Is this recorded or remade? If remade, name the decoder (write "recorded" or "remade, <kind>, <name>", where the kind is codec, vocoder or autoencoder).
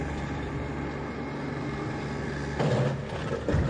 recorded